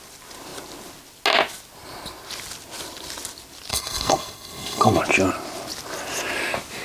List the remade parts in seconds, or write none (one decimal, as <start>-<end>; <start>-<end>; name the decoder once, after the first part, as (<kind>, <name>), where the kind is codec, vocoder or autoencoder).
3.7-5.0 (codec, SNAC)